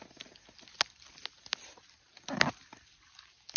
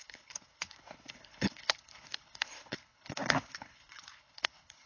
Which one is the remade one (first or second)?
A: second